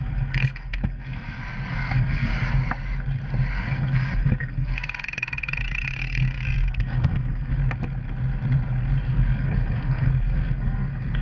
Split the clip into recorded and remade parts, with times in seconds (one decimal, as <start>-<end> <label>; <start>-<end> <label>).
0.0-2.3 remade; 2.3-3.5 recorded; 3.5-7.6 remade; 7.6-9.1 recorded; 9.1-11.2 remade